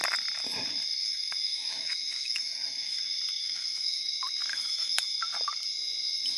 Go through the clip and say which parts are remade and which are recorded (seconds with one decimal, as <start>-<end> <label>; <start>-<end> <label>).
0.0-1.0 recorded; 1.0-3.0 remade; 3.0-3.4 recorded; 3.4-4.1 remade; 4.1-4.5 recorded; 4.5-5.2 remade; 5.2-6.4 recorded